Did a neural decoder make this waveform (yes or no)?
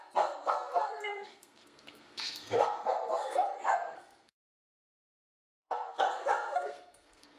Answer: yes